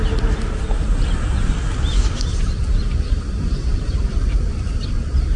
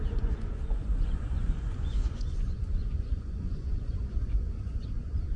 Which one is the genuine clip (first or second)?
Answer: first